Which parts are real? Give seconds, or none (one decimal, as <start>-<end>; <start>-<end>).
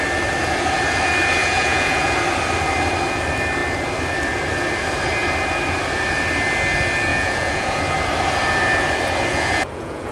0.0-1.4; 2.1-7.1; 7.8-9.3